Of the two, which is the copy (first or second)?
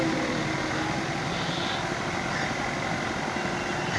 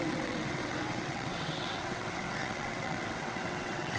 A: second